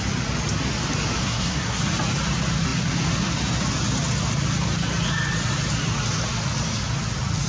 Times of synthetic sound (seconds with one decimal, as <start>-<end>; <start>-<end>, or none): 1.2-1.8